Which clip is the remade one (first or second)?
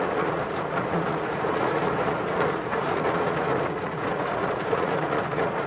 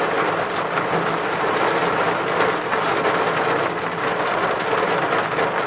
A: first